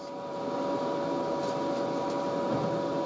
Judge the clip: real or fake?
real